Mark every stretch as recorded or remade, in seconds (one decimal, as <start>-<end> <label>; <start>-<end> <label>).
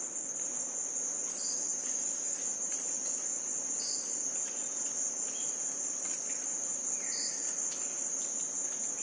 0.0-1.3 recorded; 1.3-2.4 remade; 2.4-9.0 recorded